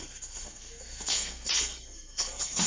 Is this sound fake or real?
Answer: fake